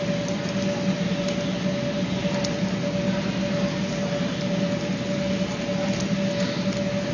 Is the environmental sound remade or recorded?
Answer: recorded